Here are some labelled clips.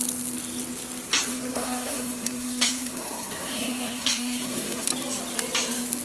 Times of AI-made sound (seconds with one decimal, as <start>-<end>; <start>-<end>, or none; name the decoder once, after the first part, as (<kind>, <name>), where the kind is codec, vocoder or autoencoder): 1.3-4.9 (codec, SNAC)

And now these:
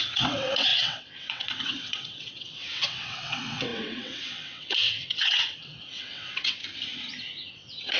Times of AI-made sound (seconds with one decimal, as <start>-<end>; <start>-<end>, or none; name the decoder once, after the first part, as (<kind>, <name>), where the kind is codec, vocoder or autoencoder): 0.0-6.6 (vocoder, WaveNeXt); 7.5-8.0

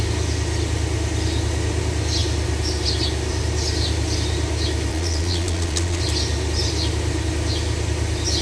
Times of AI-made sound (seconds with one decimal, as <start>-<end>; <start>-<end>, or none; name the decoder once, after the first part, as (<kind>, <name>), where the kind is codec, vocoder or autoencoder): 4.9-6.0 (vocoder, Vocos)

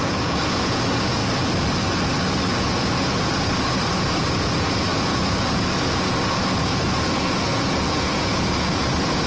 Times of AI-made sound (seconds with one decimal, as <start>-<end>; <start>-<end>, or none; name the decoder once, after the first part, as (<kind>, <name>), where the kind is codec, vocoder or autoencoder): 0.0-1.2 (vocoder, Vocos); 2.6-9.3